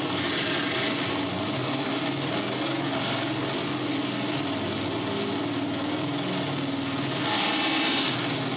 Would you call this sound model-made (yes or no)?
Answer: no